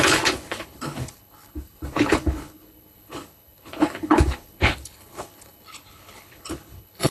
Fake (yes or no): yes